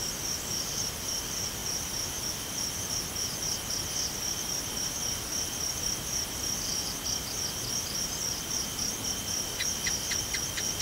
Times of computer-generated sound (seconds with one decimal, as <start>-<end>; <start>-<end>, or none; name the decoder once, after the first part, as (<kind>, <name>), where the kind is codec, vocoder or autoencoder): 8.3-8.9 (vocoder, BigVGAN v2)